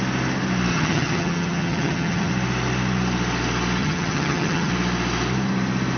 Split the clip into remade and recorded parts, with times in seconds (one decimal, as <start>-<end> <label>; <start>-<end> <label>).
0.0-0.7 recorded; 0.7-2.3 remade; 2.3-3.8 recorded; 3.8-4.7 remade; 4.7-6.0 recorded